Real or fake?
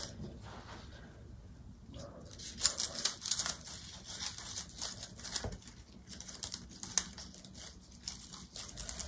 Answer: real